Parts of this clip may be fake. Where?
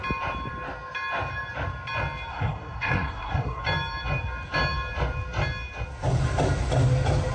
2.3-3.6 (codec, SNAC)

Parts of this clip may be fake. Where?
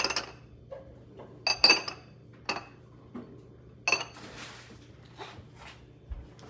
none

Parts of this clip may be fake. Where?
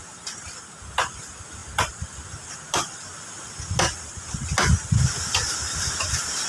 none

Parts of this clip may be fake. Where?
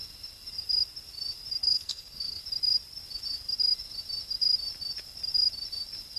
1.6-2.4 (codec, SNAC)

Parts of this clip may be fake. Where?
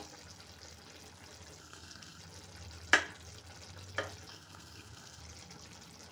1.6-2.2 (codec, SNAC); 4.3-5.2